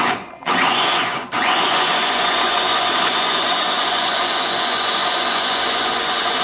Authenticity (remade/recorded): remade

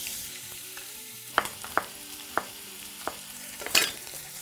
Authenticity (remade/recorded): remade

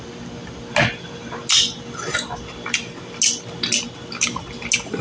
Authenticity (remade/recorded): recorded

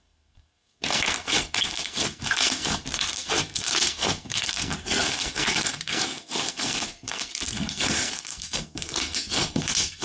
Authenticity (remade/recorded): remade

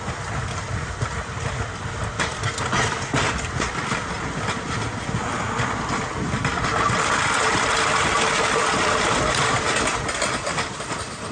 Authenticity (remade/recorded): recorded